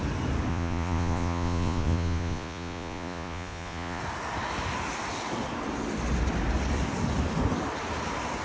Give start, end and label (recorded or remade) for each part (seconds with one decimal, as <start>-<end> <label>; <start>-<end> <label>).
0.0-0.5 recorded; 0.5-4.0 remade; 4.0-8.4 recorded